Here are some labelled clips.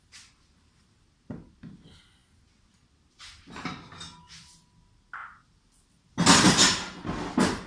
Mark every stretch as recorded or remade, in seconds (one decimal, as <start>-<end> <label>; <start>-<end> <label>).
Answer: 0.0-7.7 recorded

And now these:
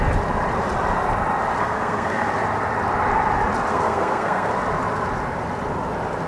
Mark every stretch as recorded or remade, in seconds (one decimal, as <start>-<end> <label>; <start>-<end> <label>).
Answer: 0.0-1.6 recorded; 1.6-2.3 remade; 2.3-3.7 recorded; 3.7-4.5 remade; 4.5-6.3 recorded

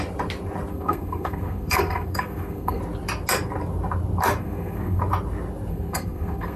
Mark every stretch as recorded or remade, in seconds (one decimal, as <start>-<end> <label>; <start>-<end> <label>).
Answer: 0.0-0.7 recorded; 0.7-2.8 remade; 2.8-4.4 recorded; 4.4-5.0 remade; 5.0-5.7 recorded; 5.7-6.6 remade

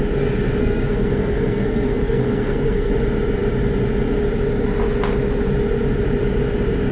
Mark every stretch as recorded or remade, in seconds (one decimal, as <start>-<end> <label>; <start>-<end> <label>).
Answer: 0.0-0.6 recorded; 0.6-2.9 remade; 2.9-6.9 recorded